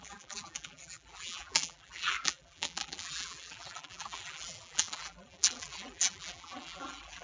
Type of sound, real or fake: fake